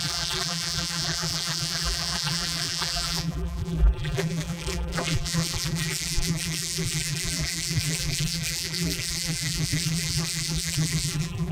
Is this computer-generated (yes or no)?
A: yes